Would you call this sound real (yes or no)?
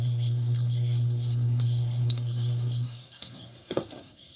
no